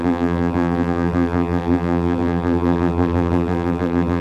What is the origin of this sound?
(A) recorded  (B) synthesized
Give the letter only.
B